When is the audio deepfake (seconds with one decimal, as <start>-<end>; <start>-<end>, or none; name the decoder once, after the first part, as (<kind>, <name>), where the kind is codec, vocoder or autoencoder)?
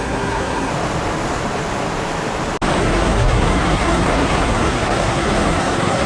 0.0-0.7 (codec, SNAC); 2.8-6.1